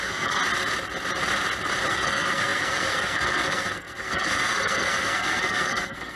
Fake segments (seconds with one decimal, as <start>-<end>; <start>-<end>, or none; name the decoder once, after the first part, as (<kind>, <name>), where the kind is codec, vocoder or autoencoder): 0.0-0.4 (codec, SNAC); 1.9-6.2